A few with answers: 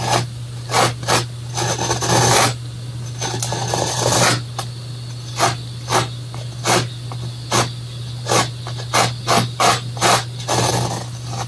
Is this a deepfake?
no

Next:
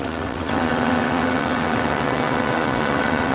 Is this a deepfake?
yes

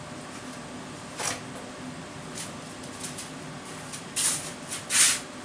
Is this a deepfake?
no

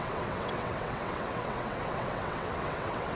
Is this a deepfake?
yes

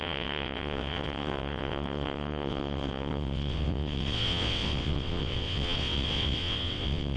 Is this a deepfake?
yes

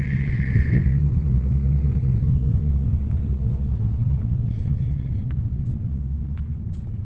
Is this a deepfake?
yes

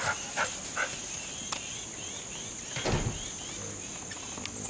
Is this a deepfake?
no